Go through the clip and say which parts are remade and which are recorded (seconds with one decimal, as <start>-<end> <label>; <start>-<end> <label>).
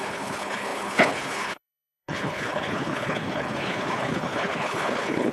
0.0-5.3 remade